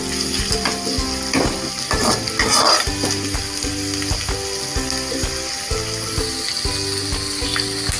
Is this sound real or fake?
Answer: real